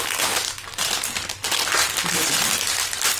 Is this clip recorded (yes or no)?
yes